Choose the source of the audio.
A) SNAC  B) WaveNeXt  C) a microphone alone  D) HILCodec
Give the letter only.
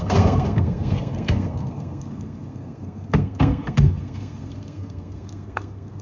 A